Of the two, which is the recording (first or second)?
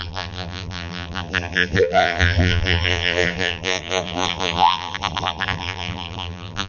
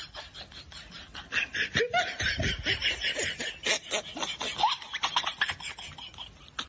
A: second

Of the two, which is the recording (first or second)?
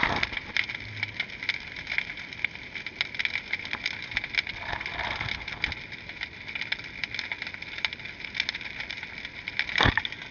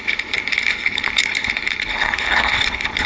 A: first